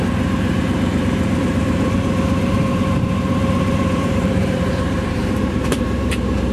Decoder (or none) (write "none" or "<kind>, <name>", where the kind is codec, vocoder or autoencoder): vocoder, BigVGAN v2